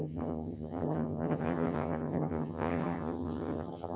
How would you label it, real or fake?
fake